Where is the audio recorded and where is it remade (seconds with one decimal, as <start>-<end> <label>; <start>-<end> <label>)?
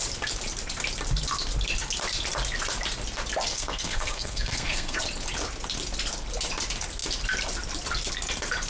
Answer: 0.0-3.5 recorded; 3.5-5.0 remade; 5.0-8.7 recorded